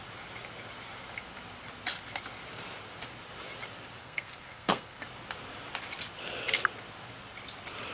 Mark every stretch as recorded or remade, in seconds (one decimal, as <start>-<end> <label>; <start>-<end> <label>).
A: 0.0-4.0 recorded; 4.0-5.0 remade; 5.0-7.9 recorded